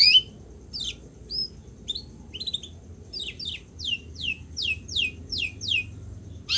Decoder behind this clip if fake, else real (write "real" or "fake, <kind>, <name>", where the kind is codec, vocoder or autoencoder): real